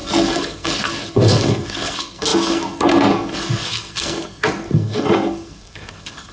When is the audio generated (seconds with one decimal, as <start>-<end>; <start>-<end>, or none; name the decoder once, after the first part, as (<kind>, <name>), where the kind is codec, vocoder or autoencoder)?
0.0-6.3 (codec, SNAC)